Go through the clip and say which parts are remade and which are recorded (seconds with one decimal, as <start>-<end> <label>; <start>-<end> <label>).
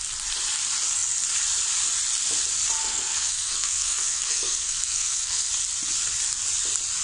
0.0-2.8 recorded; 2.8-5.5 remade; 5.5-7.0 recorded